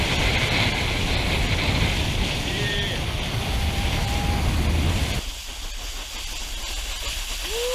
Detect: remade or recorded recorded